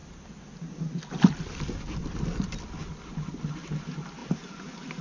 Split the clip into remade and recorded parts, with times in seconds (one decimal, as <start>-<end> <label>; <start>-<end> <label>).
0.0-4.2 recorded; 4.2-5.0 remade